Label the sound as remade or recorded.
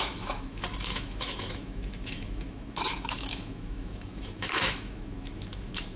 remade